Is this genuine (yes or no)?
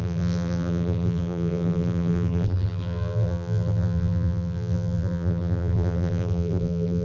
no